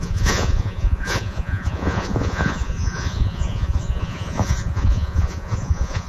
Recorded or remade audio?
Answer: remade